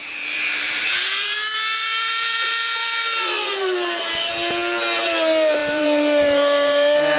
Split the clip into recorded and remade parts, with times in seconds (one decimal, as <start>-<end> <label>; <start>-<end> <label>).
0.0-4.3 remade; 4.3-5.6 recorded; 5.6-7.2 remade